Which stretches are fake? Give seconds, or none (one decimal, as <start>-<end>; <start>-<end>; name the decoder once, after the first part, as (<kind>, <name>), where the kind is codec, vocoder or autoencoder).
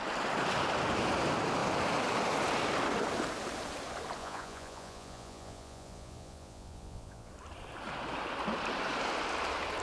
4.2-7.3 (vocoder, Vocos)